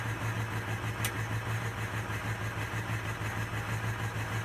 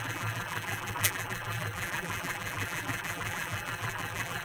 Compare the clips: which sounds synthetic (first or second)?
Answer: second